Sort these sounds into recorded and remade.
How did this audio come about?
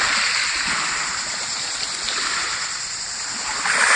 recorded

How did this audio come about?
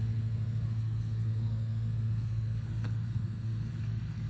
remade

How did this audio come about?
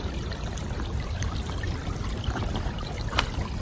recorded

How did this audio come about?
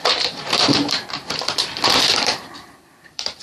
remade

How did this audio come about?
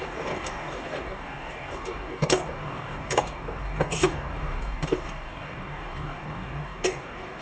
remade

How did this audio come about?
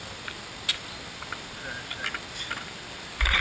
recorded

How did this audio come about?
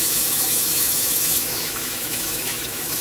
remade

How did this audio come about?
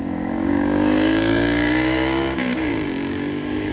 remade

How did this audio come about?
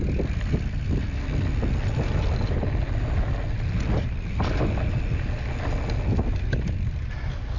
recorded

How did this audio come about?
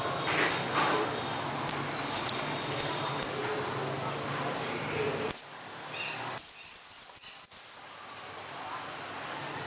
recorded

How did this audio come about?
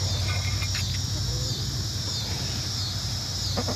recorded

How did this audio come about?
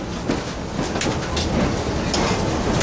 recorded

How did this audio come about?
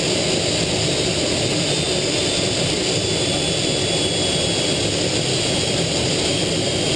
recorded